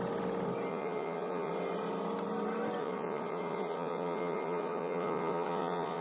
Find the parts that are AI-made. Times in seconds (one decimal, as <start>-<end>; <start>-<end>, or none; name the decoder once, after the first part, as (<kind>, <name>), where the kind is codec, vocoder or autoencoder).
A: 0.7-1.5 (vocoder, Vocos); 2.8-6.0